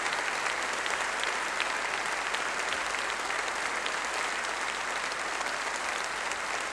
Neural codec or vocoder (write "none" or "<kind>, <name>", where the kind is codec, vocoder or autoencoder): none